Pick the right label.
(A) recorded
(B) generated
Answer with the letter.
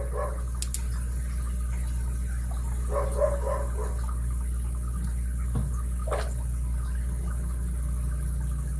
A